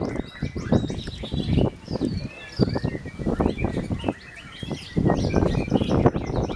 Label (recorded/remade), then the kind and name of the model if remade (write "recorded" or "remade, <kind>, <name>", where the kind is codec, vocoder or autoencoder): recorded